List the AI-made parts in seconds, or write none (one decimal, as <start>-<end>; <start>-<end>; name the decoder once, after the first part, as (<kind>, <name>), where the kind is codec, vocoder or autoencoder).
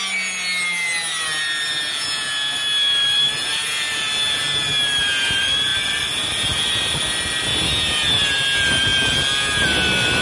none